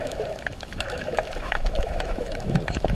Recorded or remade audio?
remade